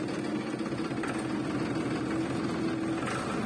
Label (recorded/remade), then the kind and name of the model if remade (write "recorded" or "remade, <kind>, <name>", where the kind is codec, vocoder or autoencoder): recorded